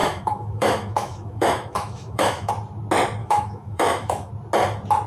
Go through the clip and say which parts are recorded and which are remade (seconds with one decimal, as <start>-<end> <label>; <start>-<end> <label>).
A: 0.0-2.5 remade; 2.5-3.2 recorded; 3.2-4.3 remade; 4.3-5.1 recorded